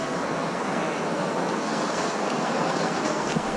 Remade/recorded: remade